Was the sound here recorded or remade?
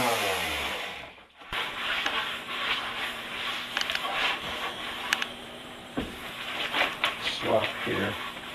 remade